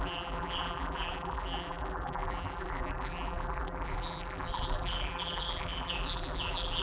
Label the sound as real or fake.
fake